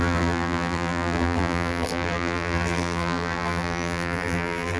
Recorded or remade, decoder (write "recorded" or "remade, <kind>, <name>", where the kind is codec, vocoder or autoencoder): remade, vocoder, BigVGAN v2